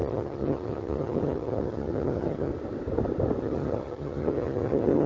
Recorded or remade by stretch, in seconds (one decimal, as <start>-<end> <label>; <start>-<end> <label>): 0.0-2.5 remade; 2.5-3.4 recorded; 3.4-5.1 remade